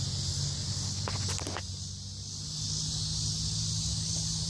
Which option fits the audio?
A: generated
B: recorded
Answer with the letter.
B